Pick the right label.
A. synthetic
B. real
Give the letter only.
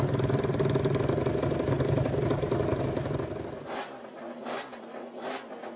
B